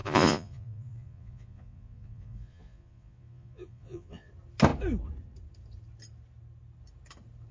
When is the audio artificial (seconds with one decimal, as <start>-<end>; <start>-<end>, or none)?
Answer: 0.0-4.3